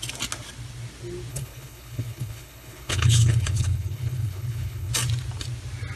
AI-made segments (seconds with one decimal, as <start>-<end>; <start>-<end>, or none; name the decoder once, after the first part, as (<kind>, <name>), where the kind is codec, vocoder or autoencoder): 1.3-4.9 (codec, HILCodec)